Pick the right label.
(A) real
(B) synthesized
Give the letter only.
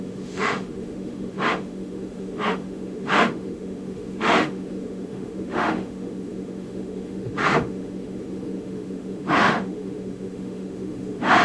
B